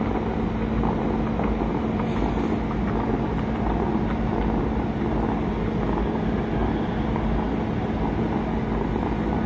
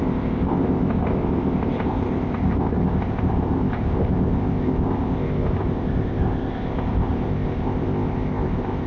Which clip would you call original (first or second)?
first